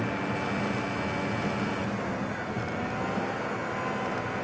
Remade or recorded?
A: recorded